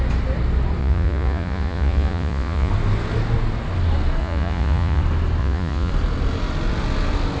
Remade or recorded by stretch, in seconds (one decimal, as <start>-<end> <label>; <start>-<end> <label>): 0.0-0.8 recorded; 0.8-2.7 remade; 2.7-4.2 recorded; 4.2-5.0 remade; 5.0-5.4 recorded; 5.4-5.9 remade; 5.9-7.4 recorded